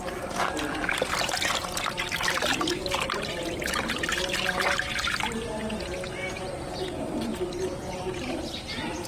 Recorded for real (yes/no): yes